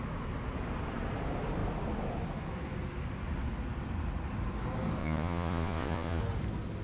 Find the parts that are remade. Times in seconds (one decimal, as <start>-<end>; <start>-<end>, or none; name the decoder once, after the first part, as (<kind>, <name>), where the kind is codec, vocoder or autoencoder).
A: 5.0-6.2 (vocoder, Vocos)